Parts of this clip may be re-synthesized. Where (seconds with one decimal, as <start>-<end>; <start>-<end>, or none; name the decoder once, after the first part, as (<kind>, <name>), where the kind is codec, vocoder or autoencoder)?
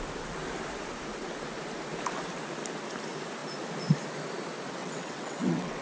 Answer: 4.8-5.8 (vocoder, WaveNeXt)